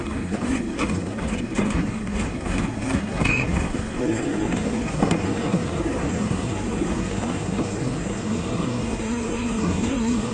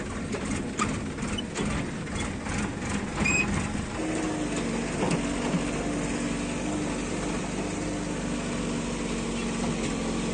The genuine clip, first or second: second